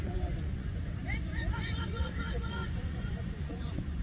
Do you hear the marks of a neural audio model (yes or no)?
yes